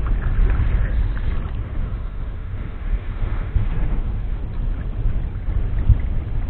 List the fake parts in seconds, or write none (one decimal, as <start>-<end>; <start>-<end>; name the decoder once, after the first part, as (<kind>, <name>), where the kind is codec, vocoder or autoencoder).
1.6-4.4 (autoencoder, DAC-VAE)